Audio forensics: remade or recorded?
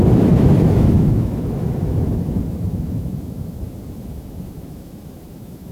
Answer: remade